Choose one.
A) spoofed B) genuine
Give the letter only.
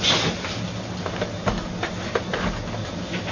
B